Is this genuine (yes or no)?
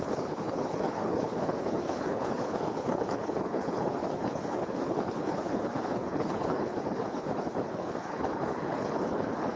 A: no